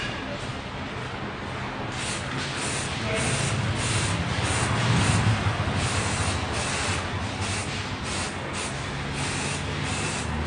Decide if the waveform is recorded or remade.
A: recorded